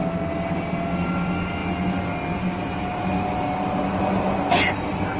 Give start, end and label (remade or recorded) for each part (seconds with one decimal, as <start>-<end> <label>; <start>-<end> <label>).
0.0-5.2 recorded